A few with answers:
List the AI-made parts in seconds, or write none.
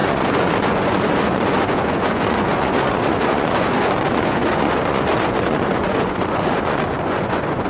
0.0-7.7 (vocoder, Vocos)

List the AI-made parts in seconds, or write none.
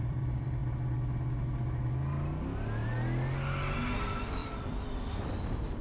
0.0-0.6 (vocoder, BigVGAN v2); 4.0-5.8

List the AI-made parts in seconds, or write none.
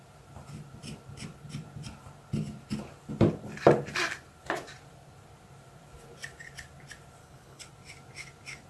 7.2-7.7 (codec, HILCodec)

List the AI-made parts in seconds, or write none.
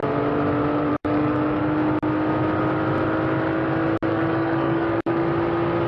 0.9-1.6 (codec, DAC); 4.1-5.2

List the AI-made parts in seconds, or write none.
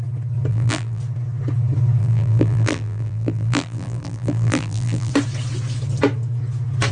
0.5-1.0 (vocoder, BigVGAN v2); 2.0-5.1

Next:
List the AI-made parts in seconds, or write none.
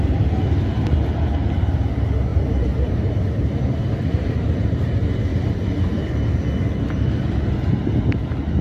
2.3-4.3 (vocoder, BigVGAN v2); 5.3-6.0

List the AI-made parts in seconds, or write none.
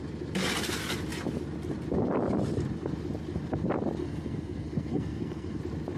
4.0-5.6 (codec, SNAC)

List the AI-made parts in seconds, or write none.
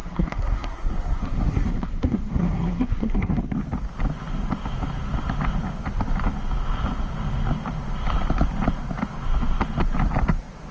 0.0-3.4 (codec, SNAC)